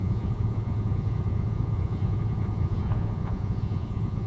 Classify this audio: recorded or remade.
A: remade